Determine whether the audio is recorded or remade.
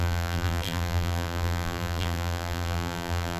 remade